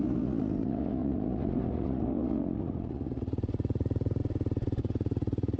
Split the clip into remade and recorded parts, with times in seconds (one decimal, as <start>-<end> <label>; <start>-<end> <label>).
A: 0.0-4.2 remade; 4.2-4.8 recorded; 4.8-5.6 remade